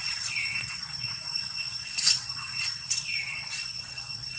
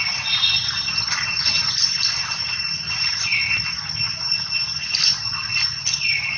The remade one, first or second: first